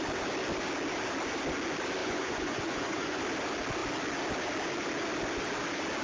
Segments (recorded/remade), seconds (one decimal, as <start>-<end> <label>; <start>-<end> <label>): 0.0-2.0 recorded; 2.0-3.2 remade; 3.2-6.0 recorded